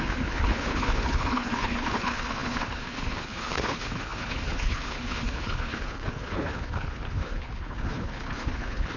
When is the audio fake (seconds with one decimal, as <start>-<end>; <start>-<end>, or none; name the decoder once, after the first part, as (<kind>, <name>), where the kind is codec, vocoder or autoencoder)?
0.0-9.0 (codec, HILCodec)